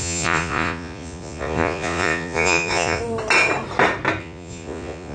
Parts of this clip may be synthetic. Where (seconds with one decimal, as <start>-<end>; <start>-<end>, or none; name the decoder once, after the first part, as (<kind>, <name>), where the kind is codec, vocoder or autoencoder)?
0.0-3.0 (vocoder, Vocos); 4.2-5.1